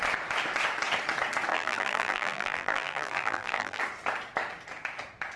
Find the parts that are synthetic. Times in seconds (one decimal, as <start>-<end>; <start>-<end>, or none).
1.5-3.8